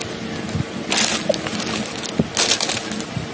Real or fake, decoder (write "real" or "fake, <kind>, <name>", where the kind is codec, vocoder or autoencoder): real